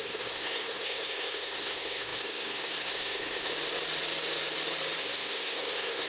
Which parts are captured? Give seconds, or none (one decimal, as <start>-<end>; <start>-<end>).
3.5-5.0